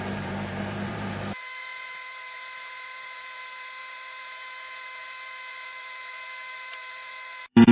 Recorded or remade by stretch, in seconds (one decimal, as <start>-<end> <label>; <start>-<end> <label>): 0.0-7.7 remade